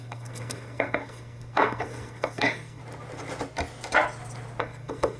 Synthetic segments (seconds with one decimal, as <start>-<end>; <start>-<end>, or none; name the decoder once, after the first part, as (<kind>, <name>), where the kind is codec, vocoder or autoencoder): 0.0-2.8 (codec, SNAC); 4.6-5.2

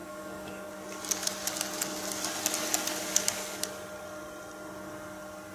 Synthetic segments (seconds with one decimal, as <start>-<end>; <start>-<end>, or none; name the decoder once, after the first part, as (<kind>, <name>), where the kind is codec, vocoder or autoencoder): 0.0-0.7 (codec, DAC)

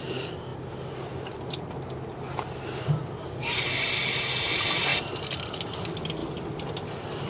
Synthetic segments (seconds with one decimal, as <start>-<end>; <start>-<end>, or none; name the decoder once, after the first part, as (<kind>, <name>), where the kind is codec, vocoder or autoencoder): none

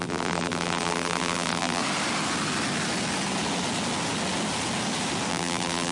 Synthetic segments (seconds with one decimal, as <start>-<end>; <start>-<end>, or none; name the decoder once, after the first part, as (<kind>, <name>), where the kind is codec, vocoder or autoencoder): 0.0-1.8 (vocoder, BigVGAN v2); 5.3-5.9

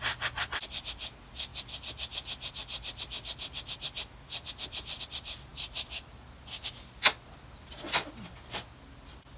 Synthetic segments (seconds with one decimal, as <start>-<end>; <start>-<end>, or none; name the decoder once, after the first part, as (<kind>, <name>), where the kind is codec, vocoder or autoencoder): none

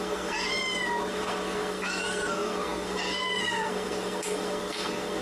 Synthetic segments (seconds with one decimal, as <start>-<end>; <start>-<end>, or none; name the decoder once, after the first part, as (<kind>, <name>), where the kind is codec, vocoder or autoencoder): 0.0-0.5 (codec, SNAC); 1.1-5.2

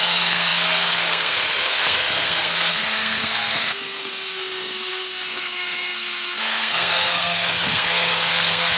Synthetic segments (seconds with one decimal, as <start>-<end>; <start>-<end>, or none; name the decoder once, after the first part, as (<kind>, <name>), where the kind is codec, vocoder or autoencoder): 0.0-8.8 (codec, SNAC)

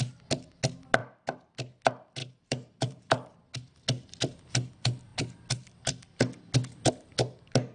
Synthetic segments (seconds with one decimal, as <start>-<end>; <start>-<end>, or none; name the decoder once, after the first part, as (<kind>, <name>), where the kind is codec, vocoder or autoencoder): 2.2-3.1 (vocoder, BigVGAN v2)